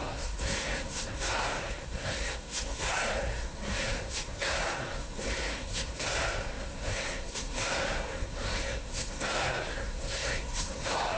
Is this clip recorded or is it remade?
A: remade